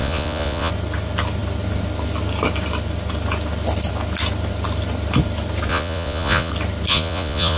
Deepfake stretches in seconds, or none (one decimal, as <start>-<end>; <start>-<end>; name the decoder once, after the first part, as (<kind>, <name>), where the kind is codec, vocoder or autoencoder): 0.0-0.7 (vocoder, Vocos); 5.7-6.5; 6.9-7.6